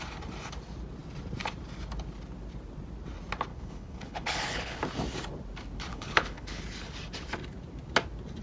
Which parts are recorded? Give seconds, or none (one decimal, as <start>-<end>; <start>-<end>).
0.0-3.5; 4.8-5.9; 6.6-8.4